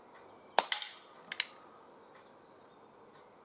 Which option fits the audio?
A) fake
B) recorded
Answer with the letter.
B